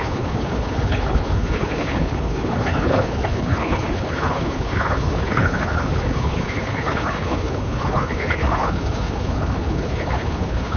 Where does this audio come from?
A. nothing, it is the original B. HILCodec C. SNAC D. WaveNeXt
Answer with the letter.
B